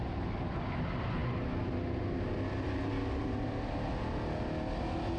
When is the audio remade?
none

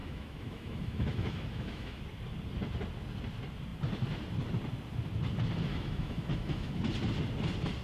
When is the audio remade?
0.0-2.0 (autoencoder, DAC-VAE); 5.7-6.8

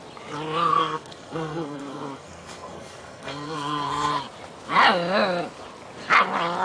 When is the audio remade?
0.7-4.1 (codec, SNAC)

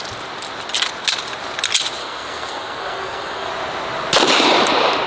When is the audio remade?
2.0-3.5 (codec, SNAC)

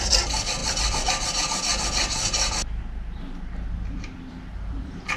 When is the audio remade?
0.0-0.6 (vocoder, BigVGAN v2); 3.7-5.2

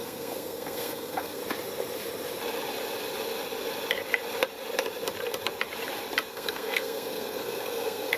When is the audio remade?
0.0-1.4 (codec, SNAC); 6.3-8.2

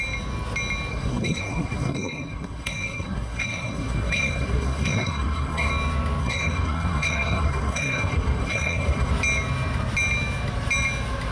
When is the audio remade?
0.9-5.7 (codec, SNAC); 6.2-9.1

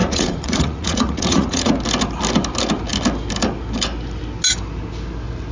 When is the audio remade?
0.0-1.7 (vocoder, Vocos)